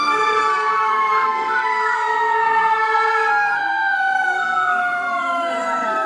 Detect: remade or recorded remade